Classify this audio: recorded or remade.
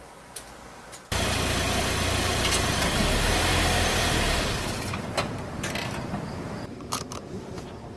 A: remade